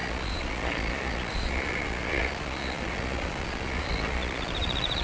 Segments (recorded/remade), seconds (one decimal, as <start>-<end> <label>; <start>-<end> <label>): 0.0-5.0 remade